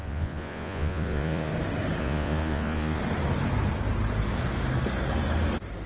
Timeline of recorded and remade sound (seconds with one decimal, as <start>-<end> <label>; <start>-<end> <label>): 0.0-1.5 remade; 1.5-2.0 recorded; 2.0-3.0 remade; 3.0-5.9 recorded